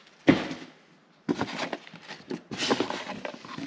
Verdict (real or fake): real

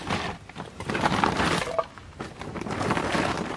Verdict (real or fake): real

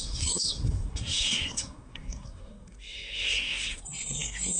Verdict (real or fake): fake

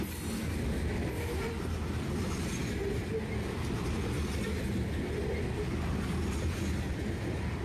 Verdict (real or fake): real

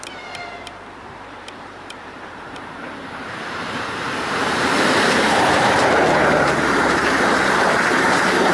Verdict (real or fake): fake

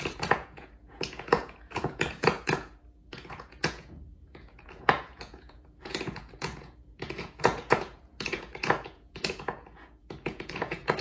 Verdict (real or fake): fake